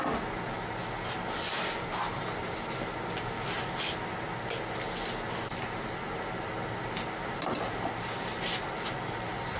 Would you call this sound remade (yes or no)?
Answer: no